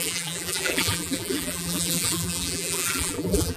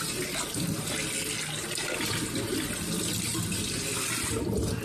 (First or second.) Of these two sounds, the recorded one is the second